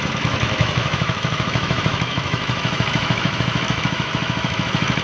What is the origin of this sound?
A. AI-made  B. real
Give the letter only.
A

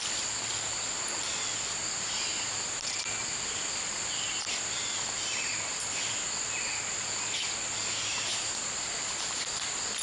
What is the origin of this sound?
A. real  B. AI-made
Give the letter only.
A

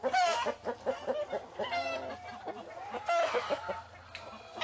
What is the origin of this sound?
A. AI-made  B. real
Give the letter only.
B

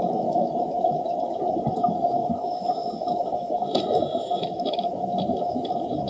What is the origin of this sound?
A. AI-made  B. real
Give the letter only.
A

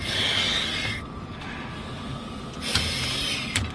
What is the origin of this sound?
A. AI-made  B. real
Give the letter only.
B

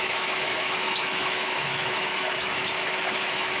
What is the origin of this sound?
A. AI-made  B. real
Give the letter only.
A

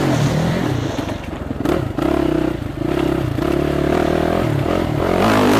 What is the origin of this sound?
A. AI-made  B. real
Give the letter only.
B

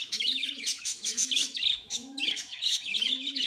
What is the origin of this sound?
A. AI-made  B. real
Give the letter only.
A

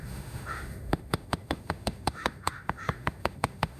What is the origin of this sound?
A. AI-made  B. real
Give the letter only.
A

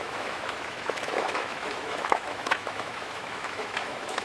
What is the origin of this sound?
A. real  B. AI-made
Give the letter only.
B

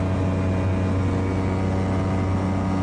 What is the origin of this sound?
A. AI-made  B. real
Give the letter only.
B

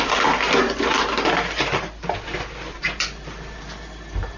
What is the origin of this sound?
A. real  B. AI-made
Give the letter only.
A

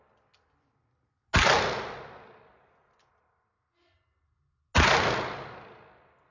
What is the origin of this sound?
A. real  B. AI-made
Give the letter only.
A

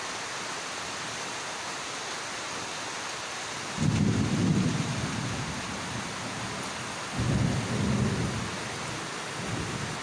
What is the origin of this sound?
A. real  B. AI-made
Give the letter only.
A